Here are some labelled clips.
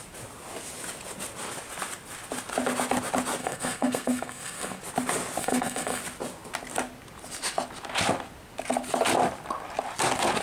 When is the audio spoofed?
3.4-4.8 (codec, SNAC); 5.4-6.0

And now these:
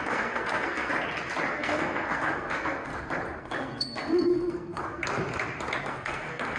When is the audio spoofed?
0.0-0.9 (codec, SNAC); 1.5-2.9; 3.4-5.0; 5.8-6.6

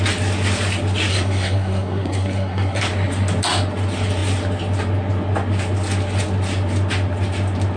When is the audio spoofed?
1.1-2.8 (codec, SNAC)

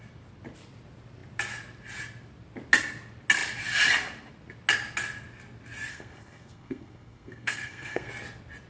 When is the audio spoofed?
5.9-8.1 (codec, SNAC)

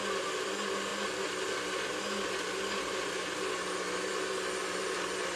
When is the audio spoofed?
none